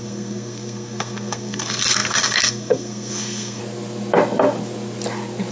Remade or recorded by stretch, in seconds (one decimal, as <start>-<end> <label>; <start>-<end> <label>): 0.0-3.6 remade; 3.6-5.5 recorded